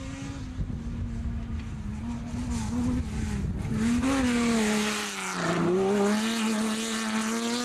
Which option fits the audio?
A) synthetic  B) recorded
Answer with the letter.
B